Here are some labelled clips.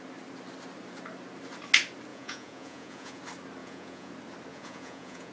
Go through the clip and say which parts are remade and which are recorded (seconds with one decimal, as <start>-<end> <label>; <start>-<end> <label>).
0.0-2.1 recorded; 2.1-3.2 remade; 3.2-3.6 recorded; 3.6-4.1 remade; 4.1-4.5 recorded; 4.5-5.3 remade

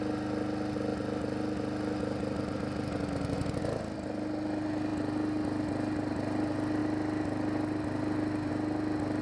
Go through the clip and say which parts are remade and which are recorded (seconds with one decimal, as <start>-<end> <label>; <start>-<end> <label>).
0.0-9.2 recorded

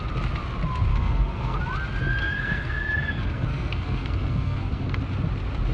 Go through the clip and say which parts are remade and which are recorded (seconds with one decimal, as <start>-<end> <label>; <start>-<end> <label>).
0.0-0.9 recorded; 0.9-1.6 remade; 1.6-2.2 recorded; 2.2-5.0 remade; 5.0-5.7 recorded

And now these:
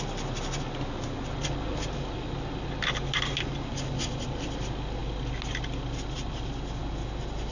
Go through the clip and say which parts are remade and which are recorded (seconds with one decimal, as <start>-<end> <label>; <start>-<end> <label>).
0.0-7.5 recorded